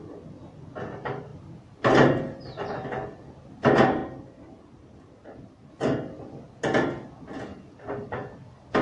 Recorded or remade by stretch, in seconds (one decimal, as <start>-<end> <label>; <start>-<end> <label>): 0.0-1.3 recorded; 1.3-2.7 remade; 2.7-4.0 recorded; 4.0-5.7 remade; 5.7-8.8 recorded